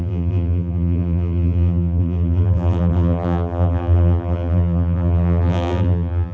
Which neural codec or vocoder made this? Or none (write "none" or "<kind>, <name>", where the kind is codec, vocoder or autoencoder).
vocoder, BigVGAN v2